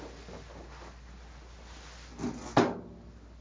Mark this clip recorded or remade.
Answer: recorded